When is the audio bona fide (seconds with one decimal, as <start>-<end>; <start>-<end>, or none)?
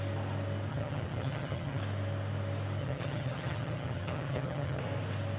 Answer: 0.0-0.7; 1.8-2.8; 4.8-5.4